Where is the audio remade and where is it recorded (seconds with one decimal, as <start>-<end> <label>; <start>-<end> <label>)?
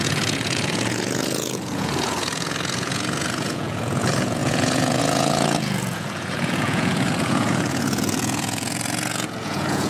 0.0-9.9 remade